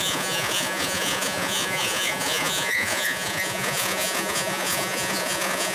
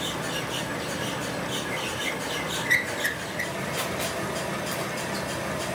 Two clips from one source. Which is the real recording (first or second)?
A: second